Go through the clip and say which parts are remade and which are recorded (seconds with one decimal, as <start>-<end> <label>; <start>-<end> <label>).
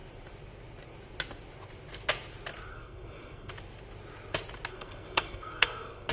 0.0-2.7 recorded; 2.7-3.5 remade; 3.5-4.7 recorded; 4.7-6.1 remade